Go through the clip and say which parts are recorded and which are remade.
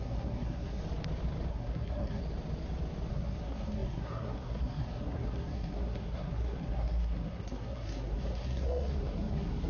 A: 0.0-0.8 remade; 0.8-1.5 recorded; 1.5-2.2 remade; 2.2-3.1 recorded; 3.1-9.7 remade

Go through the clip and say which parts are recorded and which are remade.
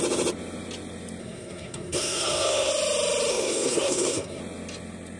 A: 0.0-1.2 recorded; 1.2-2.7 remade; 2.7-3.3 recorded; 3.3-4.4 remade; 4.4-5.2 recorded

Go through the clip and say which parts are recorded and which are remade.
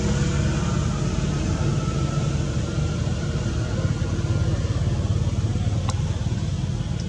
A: 0.0-7.1 recorded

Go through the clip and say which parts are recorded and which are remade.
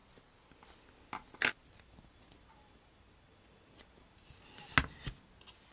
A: 0.0-5.7 recorded